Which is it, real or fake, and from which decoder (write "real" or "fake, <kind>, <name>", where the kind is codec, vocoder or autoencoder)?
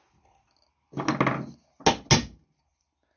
real